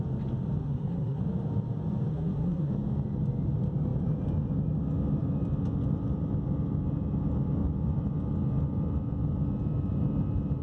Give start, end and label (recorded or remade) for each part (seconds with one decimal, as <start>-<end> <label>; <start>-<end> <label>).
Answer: 0.0-0.6 recorded; 0.6-1.2 remade; 1.2-2.1 recorded; 2.1-2.7 remade; 2.7-10.6 recorded